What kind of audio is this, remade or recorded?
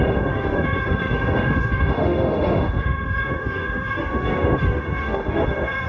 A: remade